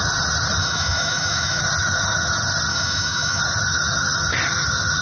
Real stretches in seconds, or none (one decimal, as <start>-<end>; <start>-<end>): 0.0-0.6; 1.6-2.7; 3.4-5.0